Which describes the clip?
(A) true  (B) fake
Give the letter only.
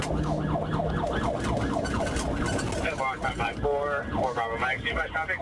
A